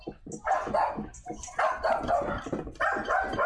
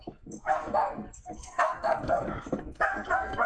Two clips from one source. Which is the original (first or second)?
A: first